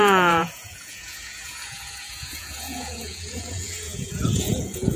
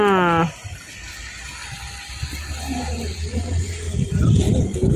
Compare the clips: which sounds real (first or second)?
second